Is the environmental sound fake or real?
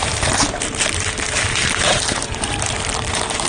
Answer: fake